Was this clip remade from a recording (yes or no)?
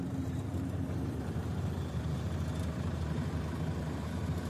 yes